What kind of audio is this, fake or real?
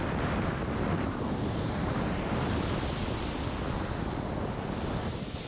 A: real